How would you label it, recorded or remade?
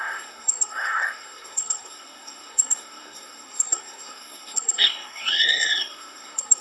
remade